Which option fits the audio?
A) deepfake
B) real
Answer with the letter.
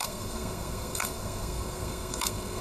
A